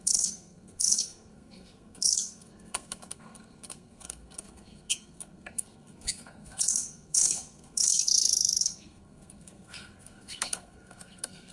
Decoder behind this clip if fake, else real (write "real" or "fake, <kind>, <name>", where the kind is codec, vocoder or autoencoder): fake, codec, SNAC